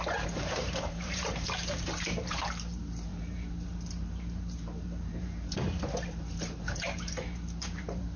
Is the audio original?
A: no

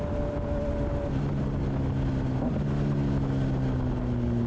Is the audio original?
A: yes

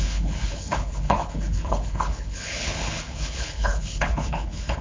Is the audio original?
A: no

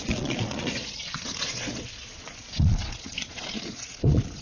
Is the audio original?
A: no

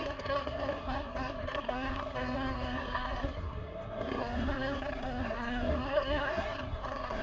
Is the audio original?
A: no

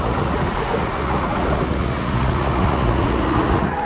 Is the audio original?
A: no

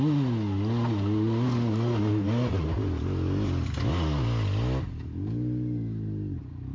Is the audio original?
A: yes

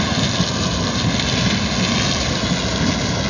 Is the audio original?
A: yes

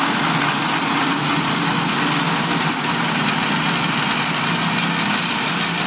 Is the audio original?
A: yes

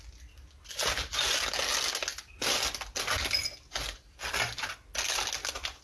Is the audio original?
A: yes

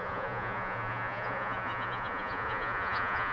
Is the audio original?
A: no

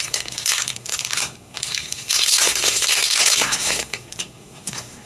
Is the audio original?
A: no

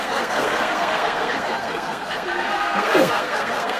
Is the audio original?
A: no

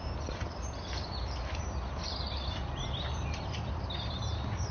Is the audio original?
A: yes